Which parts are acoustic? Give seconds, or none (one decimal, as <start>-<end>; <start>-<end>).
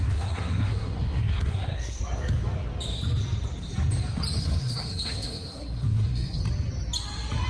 2.0-4.4; 6.4-7.5